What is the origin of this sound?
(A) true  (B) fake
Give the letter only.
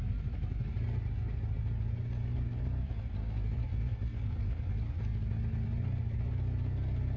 A